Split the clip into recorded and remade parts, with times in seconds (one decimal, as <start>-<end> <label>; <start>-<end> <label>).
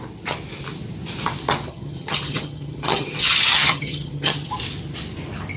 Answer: 0.0-1.7 recorded; 1.7-4.5 remade; 4.5-5.6 recorded